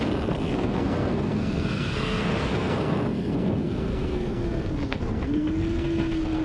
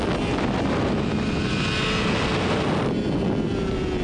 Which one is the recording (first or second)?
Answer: second